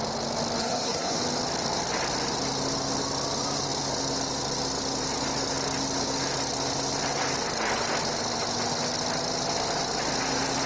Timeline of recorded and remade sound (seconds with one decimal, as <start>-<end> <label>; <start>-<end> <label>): 0.0-0.6 recorded; 0.6-1.2 remade; 1.2-10.7 recorded